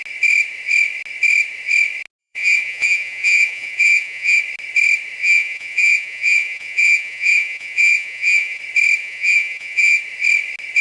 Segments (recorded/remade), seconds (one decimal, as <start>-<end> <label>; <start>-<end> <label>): 0.0-2.2 recorded; 2.2-4.4 remade; 4.4-5.2 recorded; 5.2-8.6 remade; 8.6-9.0 recorded; 9.0-10.0 remade; 10.0-10.8 recorded